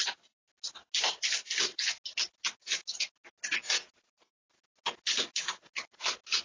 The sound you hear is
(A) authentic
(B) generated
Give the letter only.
A